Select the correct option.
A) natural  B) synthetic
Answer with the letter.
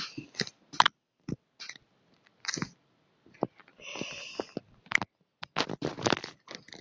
A